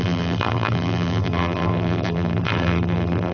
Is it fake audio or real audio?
fake